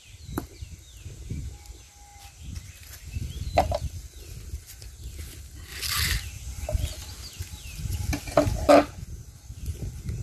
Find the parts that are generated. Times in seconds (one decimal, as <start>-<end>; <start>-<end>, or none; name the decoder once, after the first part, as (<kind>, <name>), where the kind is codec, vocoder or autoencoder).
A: none